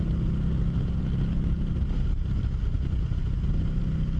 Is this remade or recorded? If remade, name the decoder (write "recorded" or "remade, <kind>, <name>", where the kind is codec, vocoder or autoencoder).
recorded